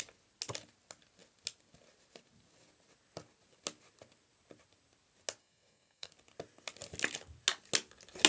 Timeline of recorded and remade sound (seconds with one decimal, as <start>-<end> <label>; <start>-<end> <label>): 0.0-5.4 recorded; 5.4-6.1 remade; 6.1-8.3 recorded